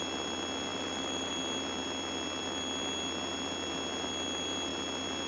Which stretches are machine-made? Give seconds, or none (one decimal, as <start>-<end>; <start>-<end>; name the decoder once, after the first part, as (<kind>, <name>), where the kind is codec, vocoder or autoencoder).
0.7-1.3 (vocoder, BigVGAN v2)

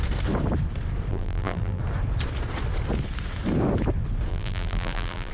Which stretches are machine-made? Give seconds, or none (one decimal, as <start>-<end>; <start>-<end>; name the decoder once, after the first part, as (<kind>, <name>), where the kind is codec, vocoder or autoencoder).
1.1-1.8 (vocoder, BigVGAN v2); 4.3-5.3

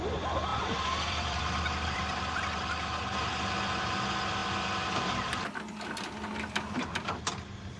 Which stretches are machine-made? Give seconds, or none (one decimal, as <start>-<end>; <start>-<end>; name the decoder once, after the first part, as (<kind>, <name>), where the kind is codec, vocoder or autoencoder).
0.5-2.1 (vocoder, BigVGAN v2)

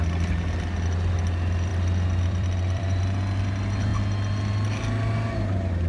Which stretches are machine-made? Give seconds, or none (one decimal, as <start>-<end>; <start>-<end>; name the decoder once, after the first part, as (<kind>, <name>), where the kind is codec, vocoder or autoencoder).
1.7-3.0 (vocoder, BigVGAN v2)

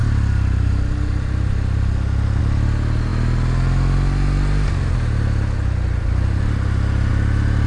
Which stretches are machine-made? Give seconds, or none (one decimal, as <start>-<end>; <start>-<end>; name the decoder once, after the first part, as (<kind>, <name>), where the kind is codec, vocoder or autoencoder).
none

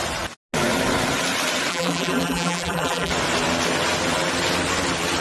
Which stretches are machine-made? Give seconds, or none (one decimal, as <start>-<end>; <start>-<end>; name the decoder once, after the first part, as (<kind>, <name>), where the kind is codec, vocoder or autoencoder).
1.7-3.1 (vocoder, BigVGAN v2)

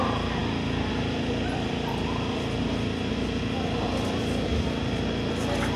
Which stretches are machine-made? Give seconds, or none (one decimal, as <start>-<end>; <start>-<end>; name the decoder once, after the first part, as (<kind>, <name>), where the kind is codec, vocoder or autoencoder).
none